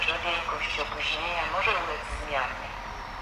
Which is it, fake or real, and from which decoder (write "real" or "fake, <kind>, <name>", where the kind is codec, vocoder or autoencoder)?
real